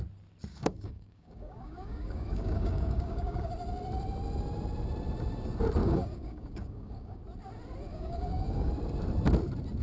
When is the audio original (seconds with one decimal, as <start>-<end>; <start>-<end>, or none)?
0.0-0.5; 3.5-5.8; 7.2-7.9; 8.7-9.8